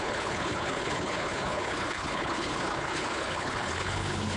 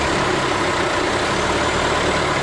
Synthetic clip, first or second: first